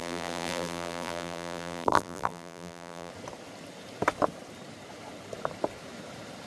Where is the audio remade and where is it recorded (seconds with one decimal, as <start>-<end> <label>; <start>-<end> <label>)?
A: 0.0-3.1 remade; 3.1-6.5 recorded